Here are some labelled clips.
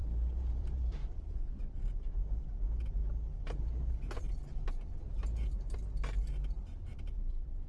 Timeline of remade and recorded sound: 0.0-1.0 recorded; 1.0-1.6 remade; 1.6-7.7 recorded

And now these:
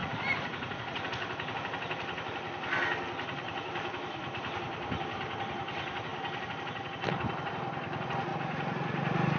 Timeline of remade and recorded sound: 0.0-1.1 remade; 1.1-8.3 recorded; 8.3-9.4 remade

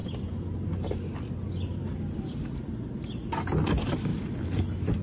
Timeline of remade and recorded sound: 0.0-5.0 recorded

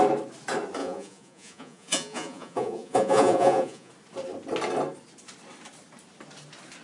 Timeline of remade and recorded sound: 0.0-0.8 recorded; 0.8-3.9 remade; 3.9-6.8 recorded